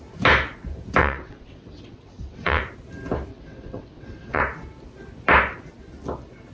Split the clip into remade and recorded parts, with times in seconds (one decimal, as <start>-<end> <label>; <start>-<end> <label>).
0.0-1.0 recorded; 1.0-2.6 remade; 2.6-3.3 recorded; 3.3-4.4 remade; 4.4-6.5 recorded